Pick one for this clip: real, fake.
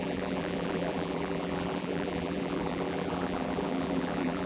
fake